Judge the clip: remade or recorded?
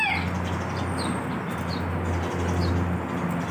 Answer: recorded